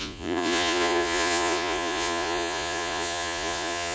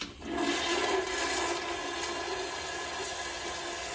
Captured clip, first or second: second